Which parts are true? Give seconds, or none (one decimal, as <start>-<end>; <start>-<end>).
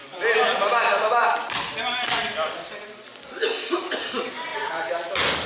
3.3-4.5